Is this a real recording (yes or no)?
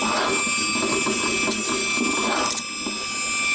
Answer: yes